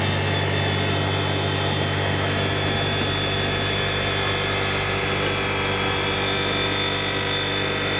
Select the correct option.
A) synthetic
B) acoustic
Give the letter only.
B